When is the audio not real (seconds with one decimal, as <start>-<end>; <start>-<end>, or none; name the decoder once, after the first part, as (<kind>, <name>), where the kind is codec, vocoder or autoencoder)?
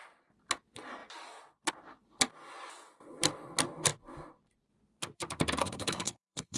5.6-6.6 (codec, SNAC)